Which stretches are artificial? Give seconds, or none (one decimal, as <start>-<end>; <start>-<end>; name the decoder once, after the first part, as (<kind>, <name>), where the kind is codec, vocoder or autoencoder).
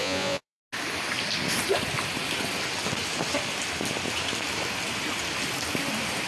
0.0-0.6 (vocoder, Vocos)